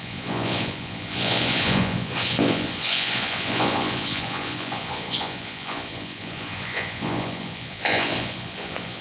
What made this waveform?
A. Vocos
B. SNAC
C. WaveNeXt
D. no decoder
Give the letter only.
A